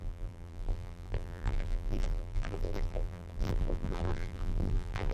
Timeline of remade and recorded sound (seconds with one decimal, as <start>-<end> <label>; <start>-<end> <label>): 0.0-5.1 remade